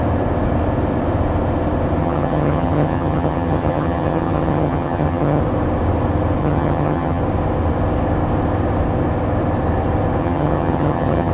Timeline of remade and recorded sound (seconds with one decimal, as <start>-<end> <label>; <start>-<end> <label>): 0.0-2.0 recorded; 2.0-5.4 remade; 5.4-6.4 recorded; 6.4-7.2 remade; 7.2-10.2 recorded; 10.2-11.3 remade